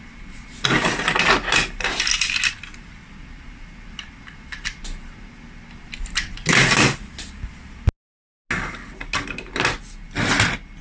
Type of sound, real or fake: real